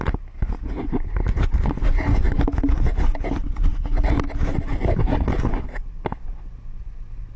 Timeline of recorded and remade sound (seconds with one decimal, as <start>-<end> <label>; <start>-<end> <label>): 0.0-7.4 recorded